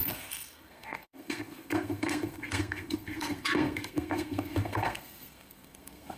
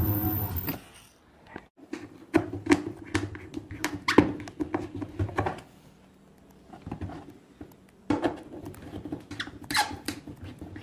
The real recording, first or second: second